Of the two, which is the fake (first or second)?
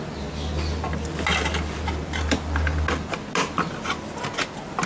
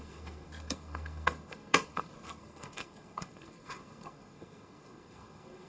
second